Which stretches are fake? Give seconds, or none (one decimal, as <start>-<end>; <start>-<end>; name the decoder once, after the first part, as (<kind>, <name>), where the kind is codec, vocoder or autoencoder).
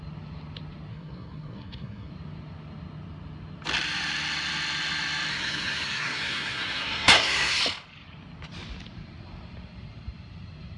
0.9-2.1 (codec, SNAC); 5.3-7.6